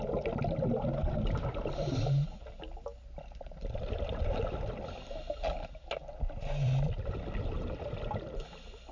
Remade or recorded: recorded